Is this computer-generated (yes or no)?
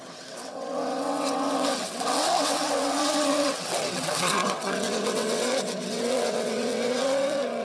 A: yes